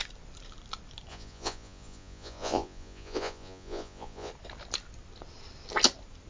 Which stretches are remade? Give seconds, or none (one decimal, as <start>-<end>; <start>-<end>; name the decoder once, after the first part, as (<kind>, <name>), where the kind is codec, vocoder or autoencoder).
1.1-4.3 (vocoder, Vocos)